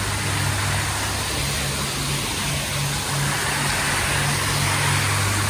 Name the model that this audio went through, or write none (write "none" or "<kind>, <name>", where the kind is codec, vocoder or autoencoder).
none